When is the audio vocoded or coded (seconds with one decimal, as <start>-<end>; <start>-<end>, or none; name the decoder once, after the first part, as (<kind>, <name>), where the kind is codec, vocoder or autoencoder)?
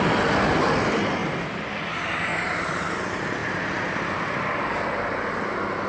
2.3-2.9 (vocoder, BigVGAN v2); 3.4-4.5